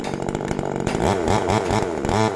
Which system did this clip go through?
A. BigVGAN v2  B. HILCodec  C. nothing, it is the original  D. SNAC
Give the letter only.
C